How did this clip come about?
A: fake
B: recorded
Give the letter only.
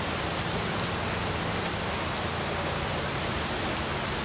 B